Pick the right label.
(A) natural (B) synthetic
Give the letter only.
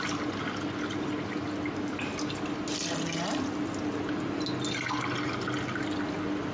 A